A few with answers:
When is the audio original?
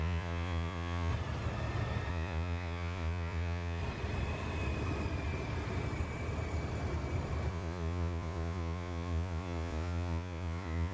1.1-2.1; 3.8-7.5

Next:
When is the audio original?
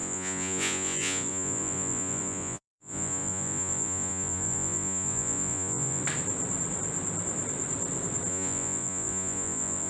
6.0-8.3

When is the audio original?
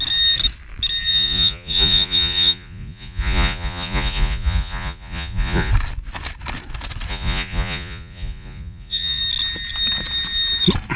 0.0-1.1; 5.7-7.1; 9.2-11.0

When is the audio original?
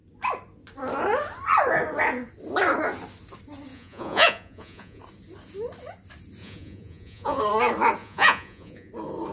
0.0-3.7; 5.0-6.4; 7.4-8.0; 8.9-9.3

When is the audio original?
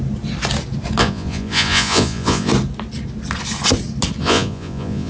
0.0-1.0; 2.5-4.2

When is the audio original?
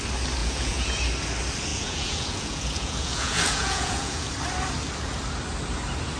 0.0-0.4; 1.0-1.7; 4.3-6.2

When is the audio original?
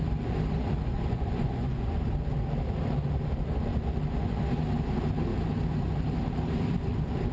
0.0-0.9; 2.0-7.3